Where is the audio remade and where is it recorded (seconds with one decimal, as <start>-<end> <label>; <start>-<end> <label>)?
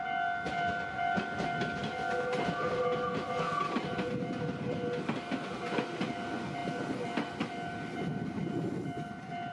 0.0-9.5 recorded